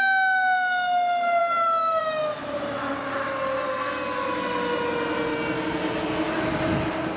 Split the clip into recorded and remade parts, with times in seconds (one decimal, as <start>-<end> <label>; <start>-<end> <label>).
0.0-1.4 recorded; 1.4-2.0 remade; 2.0-7.2 recorded